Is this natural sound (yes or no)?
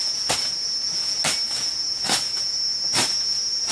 yes